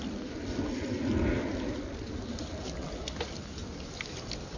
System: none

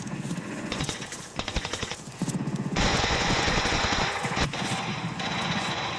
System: vocoder, Vocos